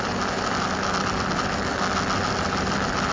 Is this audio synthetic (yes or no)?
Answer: no